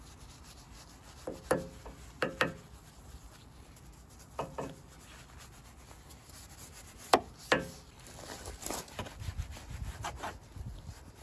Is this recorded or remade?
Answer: recorded